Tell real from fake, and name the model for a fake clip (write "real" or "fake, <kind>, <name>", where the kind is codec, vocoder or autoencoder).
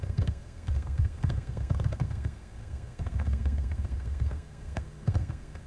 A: fake, codec, SNAC